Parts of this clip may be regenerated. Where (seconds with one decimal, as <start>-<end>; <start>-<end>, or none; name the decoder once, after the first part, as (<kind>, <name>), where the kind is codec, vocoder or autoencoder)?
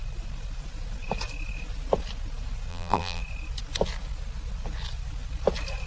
2.7-3.2 (vocoder, BigVGAN v2)